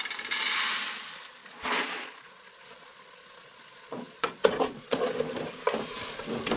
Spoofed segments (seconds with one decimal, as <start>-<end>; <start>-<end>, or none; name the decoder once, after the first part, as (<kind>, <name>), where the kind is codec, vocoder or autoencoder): 1.4-5.1 (vocoder, Vocos)